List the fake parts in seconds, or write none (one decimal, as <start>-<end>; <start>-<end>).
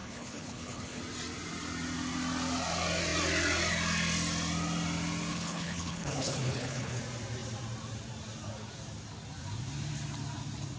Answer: 0.0-1.0; 5.3-7.0